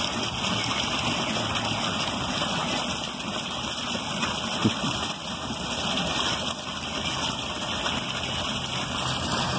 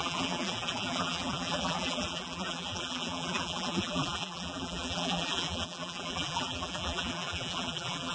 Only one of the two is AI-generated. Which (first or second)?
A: second